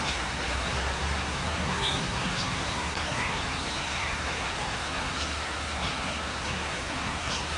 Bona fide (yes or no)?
no